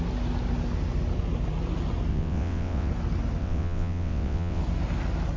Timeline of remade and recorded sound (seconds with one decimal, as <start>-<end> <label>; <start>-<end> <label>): 0.0-2.1 recorded; 2.1-2.9 remade; 2.9-3.4 recorded; 3.4-4.6 remade; 4.6-5.4 recorded